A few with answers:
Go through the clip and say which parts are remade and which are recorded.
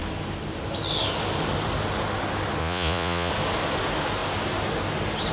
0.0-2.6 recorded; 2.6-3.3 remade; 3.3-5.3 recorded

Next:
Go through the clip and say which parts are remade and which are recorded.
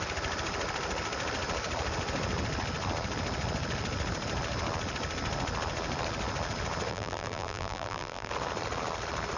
0.0-6.9 recorded; 6.9-8.3 remade; 8.3-9.4 recorded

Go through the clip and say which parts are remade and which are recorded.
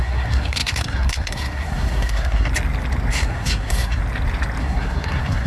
0.0-2.5 remade; 2.5-3.1 recorded; 3.1-4.0 remade; 4.0-4.6 recorded; 4.6-5.5 remade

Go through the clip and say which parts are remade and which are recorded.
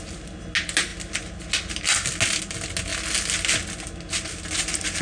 0.0-5.0 recorded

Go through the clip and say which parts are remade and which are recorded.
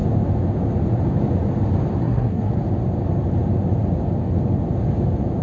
0.0-2.0 recorded; 2.0-2.5 remade; 2.5-5.4 recorded